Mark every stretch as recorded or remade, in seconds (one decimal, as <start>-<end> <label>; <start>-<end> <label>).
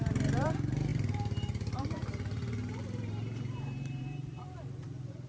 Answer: 0.0-5.3 remade